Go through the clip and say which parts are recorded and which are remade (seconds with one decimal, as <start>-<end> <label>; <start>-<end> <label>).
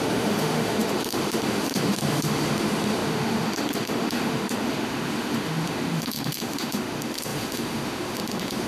0.0-8.7 remade